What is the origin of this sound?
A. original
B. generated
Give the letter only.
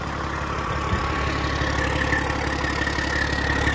A